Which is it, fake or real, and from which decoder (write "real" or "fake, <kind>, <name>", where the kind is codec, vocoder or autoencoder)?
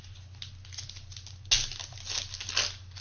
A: real